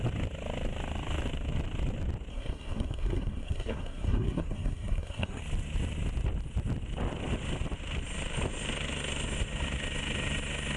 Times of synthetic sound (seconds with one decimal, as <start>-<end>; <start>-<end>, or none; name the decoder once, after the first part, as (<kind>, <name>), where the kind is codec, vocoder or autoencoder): 2.3-5.4 (codec, SNAC)